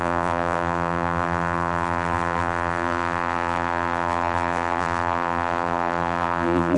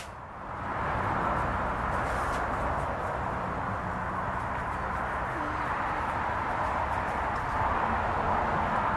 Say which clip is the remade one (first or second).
first